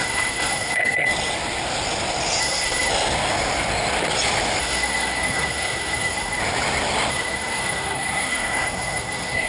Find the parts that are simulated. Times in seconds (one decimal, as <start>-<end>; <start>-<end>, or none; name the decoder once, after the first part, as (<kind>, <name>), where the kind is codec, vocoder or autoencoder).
0.0-1.1 (codec, SNAC); 2.4-2.9; 4.6-6.4; 7.1-9.5

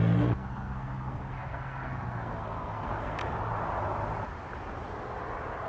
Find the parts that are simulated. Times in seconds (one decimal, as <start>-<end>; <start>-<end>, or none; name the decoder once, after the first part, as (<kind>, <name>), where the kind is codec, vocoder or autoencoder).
0.0-3.2 (codec, SNAC)